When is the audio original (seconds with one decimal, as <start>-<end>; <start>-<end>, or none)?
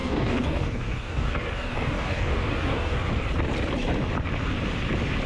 3.2-5.3